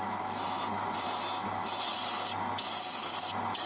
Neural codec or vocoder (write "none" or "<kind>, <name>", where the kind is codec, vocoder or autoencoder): none